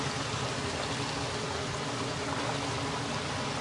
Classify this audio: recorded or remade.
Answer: recorded